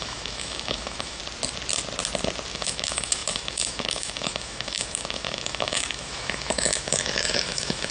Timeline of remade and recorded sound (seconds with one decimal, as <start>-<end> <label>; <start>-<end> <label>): 0.0-1.2 remade; 1.2-2.5 recorded; 2.5-7.9 remade